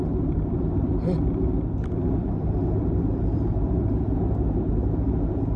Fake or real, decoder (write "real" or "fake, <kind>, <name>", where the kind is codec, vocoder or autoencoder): fake, vocoder, BigVGAN v2